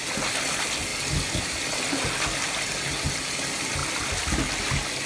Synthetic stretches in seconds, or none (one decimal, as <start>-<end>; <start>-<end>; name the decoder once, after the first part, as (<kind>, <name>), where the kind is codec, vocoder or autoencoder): none